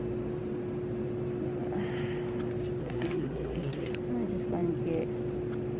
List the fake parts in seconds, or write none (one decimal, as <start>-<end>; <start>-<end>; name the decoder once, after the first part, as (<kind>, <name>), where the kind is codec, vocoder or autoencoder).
2.8-3.9 (codec, SNAC)